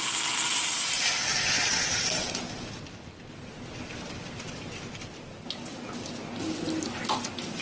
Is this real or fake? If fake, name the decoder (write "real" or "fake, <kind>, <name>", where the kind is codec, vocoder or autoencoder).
real